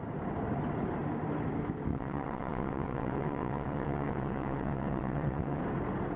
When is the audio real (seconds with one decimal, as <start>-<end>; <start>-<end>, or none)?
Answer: 0.0-1.9; 5.6-6.2